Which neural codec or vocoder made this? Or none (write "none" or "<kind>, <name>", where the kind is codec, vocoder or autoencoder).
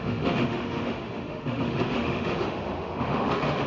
autoencoder, DAC-VAE